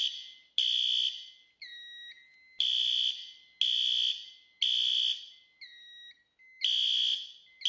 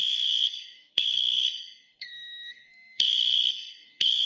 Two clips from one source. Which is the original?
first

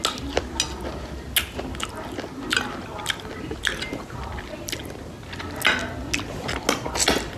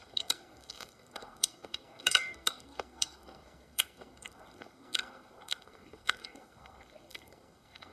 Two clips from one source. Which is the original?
first